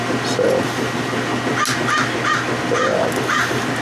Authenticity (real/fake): real